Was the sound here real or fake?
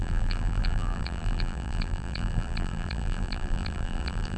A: fake